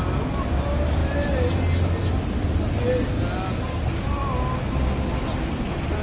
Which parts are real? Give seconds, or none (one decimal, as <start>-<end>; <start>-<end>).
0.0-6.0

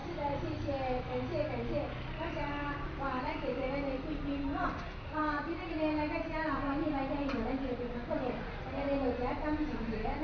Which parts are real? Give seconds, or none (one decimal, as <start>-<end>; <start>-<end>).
0.0-5.2; 5.7-10.2

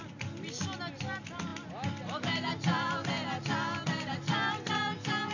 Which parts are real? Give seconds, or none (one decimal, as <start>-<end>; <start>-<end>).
0.0-5.3

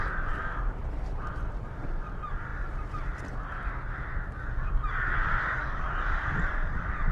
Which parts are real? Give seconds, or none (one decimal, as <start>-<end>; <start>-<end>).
0.0-0.8; 1.9-2.5; 3.3-5.6

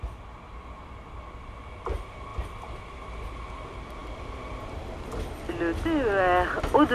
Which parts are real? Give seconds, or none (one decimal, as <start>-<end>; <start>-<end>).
0.0-6.9